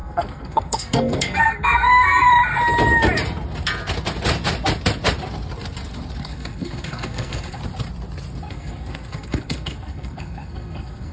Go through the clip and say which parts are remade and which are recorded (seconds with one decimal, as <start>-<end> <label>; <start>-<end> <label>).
0.0-2.3 remade; 2.3-6.2 recorded; 6.2-7.6 remade; 7.6-8.5 recorded; 8.5-11.1 remade